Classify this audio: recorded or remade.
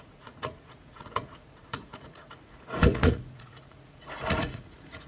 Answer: remade